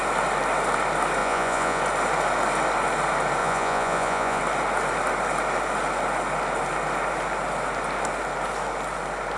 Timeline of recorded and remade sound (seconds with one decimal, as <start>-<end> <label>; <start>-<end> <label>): 0.0-1.2 recorded; 1.2-1.8 remade; 1.8-3.4 recorded; 3.4-4.4 remade; 4.4-9.4 recorded